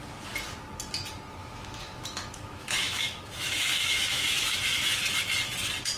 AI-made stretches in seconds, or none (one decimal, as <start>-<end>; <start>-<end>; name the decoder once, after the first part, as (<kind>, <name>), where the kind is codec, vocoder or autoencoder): 1.4-5.0 (autoencoder, DAC-VAE)